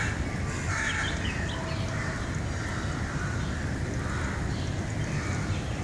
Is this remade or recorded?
recorded